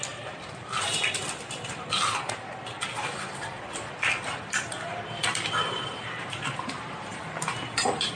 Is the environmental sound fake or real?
fake